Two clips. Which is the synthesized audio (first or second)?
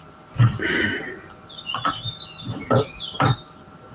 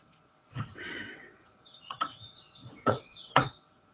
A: second